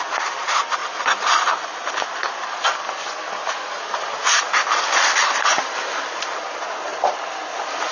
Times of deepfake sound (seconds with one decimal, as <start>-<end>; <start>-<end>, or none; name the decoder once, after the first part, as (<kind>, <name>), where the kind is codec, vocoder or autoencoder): 0.8-1.5 (vocoder, BigVGAN v2); 2.2-2.7; 3.4-4.0; 6.9-7.5